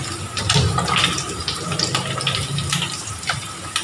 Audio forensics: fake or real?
real